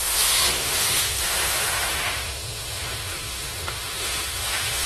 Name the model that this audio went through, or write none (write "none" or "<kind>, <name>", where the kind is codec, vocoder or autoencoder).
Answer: autoencoder, DAC-VAE